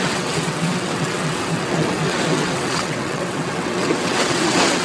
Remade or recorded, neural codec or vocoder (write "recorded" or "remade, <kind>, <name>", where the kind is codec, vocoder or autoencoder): remade, vocoder, WaveNeXt